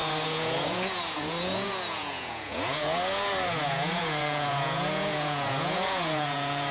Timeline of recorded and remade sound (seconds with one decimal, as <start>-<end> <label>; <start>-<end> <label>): 0.0-6.7 remade